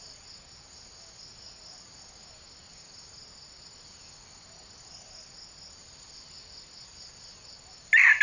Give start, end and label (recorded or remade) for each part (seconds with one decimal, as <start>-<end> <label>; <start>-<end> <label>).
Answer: 0.0-8.2 recorded